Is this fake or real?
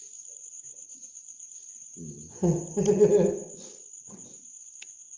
real